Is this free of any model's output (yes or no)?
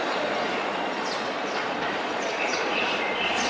no